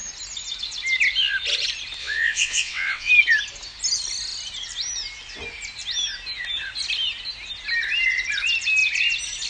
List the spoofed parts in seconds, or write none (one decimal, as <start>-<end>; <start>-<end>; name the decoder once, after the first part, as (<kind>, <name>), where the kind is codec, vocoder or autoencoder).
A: 2.0-3.1 (vocoder, WaveNeXt)